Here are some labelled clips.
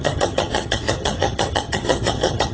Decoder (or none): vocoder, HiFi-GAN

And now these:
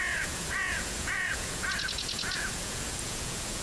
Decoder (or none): vocoder, Vocos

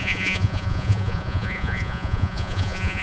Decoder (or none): vocoder, Vocos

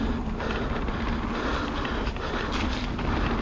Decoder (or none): none